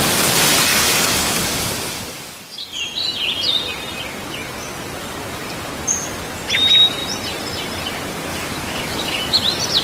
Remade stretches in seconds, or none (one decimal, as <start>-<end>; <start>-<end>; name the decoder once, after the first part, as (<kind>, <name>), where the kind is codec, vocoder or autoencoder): 0.7-2.8 (codec, DAC); 8.3-9.2